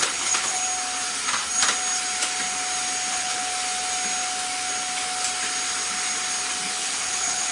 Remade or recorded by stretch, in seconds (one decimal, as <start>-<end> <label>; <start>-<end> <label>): 0.0-0.6 remade; 0.6-3.1 recorded; 3.1-3.5 remade; 3.5-6.7 recorded; 6.7-7.5 remade